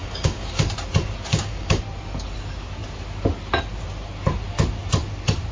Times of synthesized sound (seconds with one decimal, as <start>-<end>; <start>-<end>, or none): 0.0-0.6; 1.3-1.8